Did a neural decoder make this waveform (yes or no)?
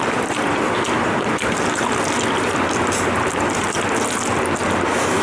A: no